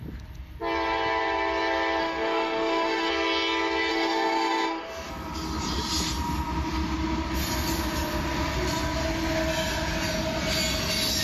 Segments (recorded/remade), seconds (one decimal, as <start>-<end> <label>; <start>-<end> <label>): 0.0-2.0 recorded; 2.0-3.1 remade; 3.1-3.9 recorded; 3.9-5.1 remade; 5.1-11.2 recorded